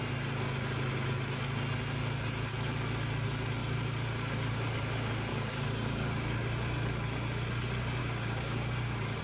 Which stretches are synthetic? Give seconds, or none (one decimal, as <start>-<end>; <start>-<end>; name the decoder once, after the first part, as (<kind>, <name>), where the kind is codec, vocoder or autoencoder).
5.3-6.5 (codec, DAC); 8.0-9.2